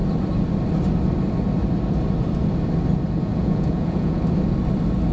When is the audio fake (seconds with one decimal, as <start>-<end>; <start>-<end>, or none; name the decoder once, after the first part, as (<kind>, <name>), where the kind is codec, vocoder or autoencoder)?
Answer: 3.3-4.2 (vocoder, Vocos)